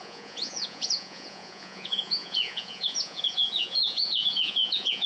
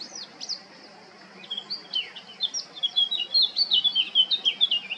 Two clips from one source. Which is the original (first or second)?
second